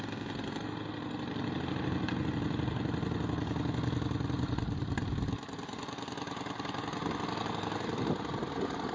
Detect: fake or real real